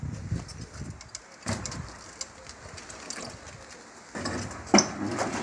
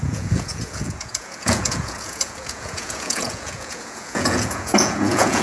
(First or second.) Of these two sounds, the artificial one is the second